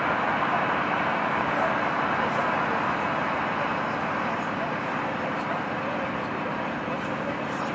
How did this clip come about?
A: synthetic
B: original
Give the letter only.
B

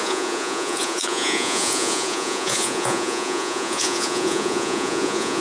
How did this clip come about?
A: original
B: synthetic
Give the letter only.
B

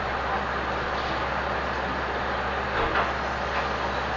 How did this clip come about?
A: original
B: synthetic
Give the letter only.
A